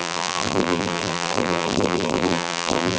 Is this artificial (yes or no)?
yes